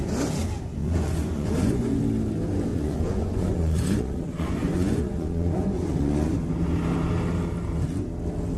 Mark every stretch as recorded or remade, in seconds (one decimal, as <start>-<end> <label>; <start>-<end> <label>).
0.0-0.8 recorded; 0.8-2.0 remade; 2.0-2.7 recorded; 2.7-6.3 remade; 6.3-8.6 recorded